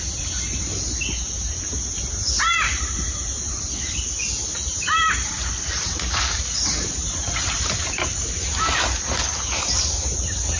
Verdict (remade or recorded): recorded